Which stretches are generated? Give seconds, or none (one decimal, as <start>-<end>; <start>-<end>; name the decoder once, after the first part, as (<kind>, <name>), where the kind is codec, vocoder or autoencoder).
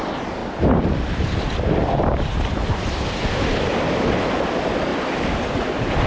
0.4-4.1 (vocoder, BigVGAN v2); 4.9-6.1